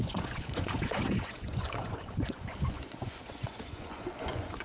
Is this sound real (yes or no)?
no